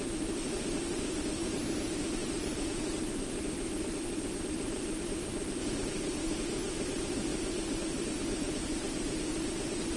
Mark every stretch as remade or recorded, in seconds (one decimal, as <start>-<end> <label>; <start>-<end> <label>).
0.0-10.0 recorded